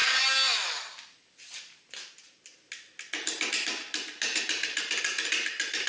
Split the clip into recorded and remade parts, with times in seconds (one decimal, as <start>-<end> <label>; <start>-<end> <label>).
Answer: 0.0-5.9 recorded